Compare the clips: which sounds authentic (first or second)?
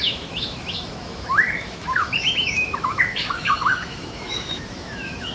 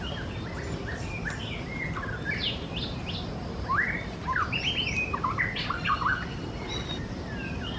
second